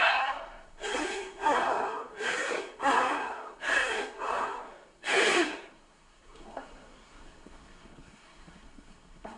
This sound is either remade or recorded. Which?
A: remade